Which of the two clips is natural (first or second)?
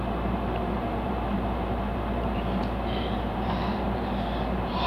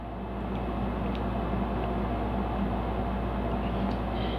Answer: second